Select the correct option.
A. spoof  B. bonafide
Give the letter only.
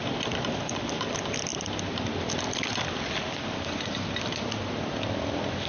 B